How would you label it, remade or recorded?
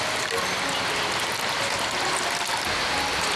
recorded